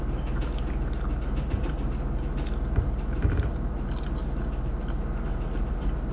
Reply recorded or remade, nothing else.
recorded